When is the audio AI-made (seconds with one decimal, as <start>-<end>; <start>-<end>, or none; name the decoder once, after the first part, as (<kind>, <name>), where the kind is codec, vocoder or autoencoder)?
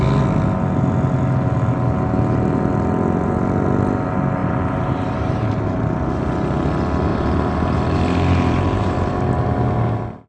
4.4-5.5 (vocoder, BigVGAN v2); 7.1-9.1